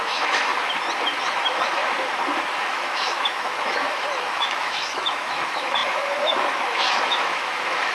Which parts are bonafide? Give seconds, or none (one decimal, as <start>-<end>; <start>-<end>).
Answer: 0.5-1.2; 1.8-2.6